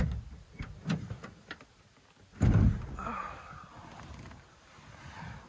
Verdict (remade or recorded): recorded